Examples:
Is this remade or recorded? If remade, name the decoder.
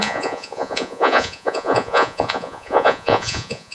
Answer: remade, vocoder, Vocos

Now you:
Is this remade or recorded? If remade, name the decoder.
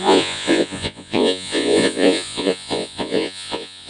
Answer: remade, vocoder, Vocos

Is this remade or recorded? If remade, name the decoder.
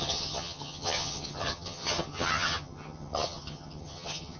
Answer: remade, vocoder, HiFi-GAN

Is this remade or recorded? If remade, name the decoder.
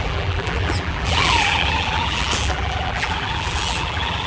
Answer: remade, vocoder, BigVGAN v2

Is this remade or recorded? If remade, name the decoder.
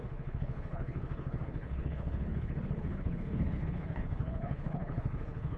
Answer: remade, codec, HILCodec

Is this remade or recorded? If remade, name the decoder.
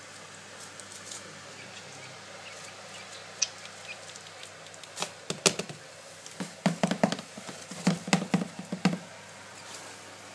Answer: recorded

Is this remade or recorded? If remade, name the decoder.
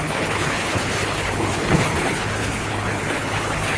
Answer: remade, codec, HILCodec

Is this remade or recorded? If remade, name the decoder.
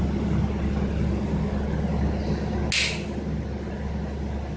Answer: recorded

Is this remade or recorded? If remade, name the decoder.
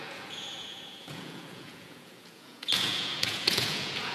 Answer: remade, vocoder, Vocos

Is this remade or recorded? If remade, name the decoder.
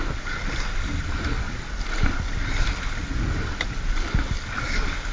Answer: recorded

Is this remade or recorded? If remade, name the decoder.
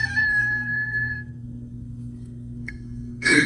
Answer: remade, codec, SNAC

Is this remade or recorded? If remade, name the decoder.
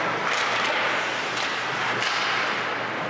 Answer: recorded